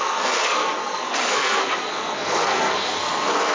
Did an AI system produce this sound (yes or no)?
yes